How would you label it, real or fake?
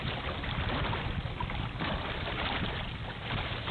real